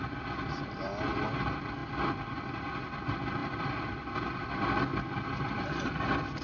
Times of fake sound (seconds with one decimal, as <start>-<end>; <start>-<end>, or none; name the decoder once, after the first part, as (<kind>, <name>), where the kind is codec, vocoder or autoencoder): none